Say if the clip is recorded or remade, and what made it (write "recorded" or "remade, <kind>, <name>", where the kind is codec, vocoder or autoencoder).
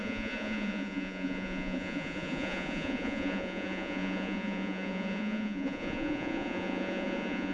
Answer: remade, vocoder, Vocos